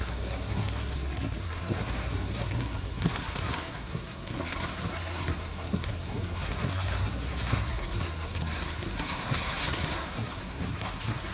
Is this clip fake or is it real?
fake